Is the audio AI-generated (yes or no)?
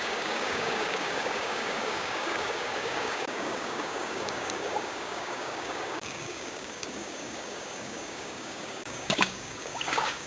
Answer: yes